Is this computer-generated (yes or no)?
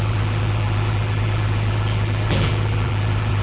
yes